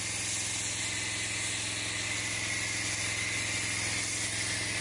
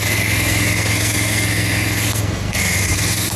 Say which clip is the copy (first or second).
second